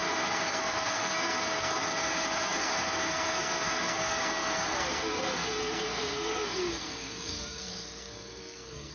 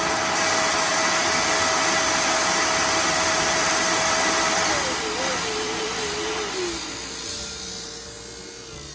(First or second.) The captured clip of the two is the second